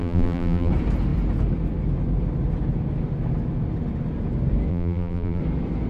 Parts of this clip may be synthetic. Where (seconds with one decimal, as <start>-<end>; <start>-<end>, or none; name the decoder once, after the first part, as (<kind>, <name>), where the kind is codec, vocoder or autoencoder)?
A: 0.0-0.7 (vocoder, BigVGAN v2); 4.7-5.4